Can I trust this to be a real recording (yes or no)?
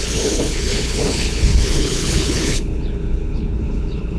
no